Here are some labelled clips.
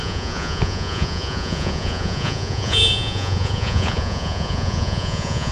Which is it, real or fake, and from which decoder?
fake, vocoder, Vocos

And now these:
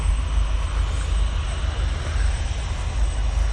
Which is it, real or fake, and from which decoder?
real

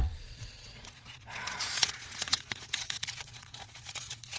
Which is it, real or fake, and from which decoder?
fake, vocoder, Vocos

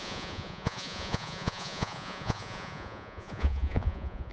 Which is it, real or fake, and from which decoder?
fake, vocoder, Vocos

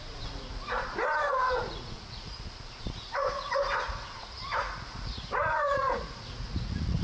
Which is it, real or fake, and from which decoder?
fake, vocoder, Vocos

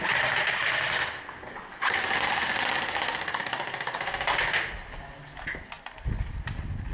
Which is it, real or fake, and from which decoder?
real